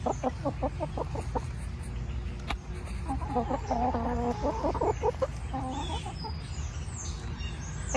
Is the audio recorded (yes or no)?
yes